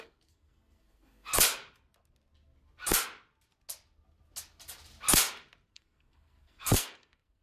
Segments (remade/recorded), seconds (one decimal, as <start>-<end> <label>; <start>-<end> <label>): 0.0-1.3 remade; 1.3-5.7 recorded; 5.7-7.4 remade